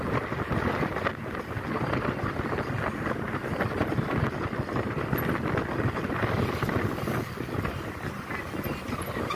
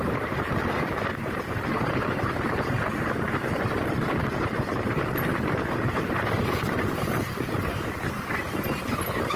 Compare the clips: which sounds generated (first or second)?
second